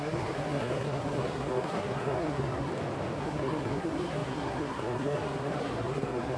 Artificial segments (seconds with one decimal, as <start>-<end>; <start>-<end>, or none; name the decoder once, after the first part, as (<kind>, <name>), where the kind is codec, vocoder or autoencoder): 0.0-2.7 (codec, SNAC); 3.2-6.4